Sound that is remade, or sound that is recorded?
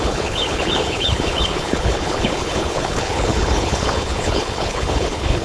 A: remade